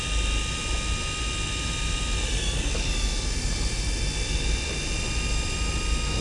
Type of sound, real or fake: real